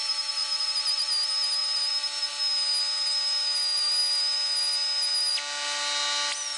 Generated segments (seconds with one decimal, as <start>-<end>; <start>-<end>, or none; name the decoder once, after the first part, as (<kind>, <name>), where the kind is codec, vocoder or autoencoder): none